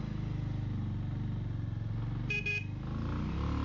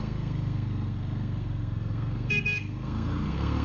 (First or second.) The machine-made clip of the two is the second